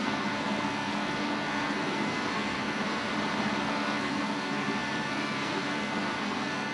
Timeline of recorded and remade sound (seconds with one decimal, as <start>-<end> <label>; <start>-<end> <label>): 0.0-3.1 remade; 3.1-3.6 recorded; 3.6-6.7 remade